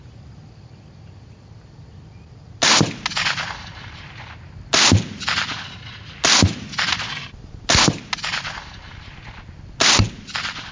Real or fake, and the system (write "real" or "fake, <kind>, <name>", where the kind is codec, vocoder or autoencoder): real